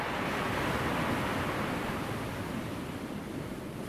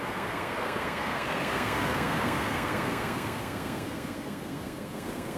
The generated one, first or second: second